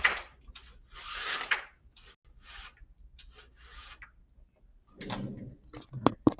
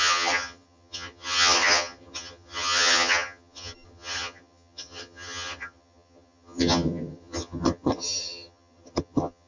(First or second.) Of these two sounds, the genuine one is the first